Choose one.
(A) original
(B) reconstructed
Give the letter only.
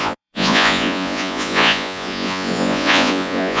B